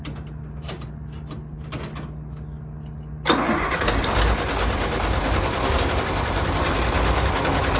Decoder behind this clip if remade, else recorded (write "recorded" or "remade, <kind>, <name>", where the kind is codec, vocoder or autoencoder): recorded